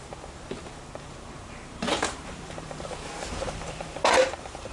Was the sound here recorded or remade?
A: remade